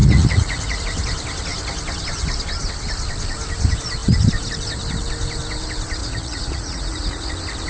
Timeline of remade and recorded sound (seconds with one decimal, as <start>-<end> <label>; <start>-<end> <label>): 0.0-0.8 remade; 0.8-6.0 recorded; 6.0-7.3 remade; 7.3-7.7 recorded